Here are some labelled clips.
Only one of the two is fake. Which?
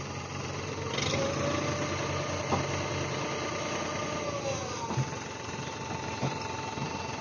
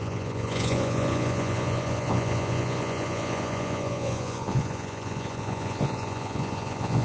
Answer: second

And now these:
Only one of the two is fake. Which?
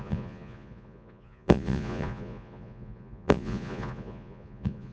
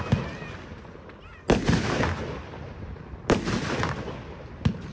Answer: first